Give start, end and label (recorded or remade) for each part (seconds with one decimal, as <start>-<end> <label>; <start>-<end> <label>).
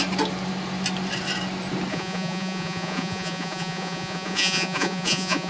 0.0-1.9 recorded; 1.9-5.5 remade